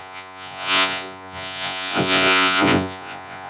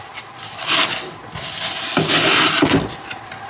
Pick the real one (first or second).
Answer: second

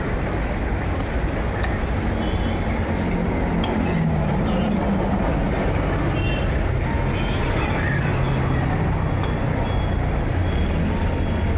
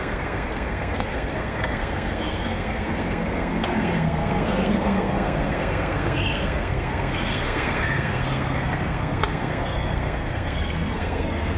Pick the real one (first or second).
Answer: first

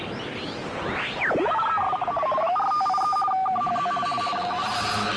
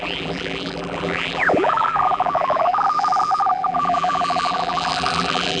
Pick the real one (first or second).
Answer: first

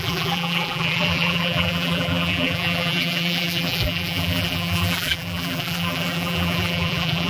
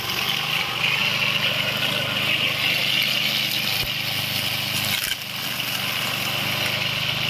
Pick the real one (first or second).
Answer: second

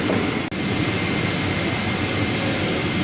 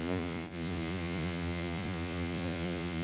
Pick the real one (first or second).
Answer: first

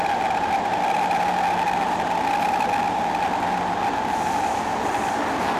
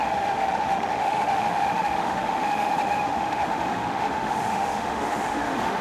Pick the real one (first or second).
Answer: first